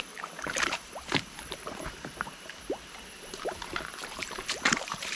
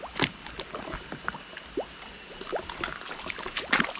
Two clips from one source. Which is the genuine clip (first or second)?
second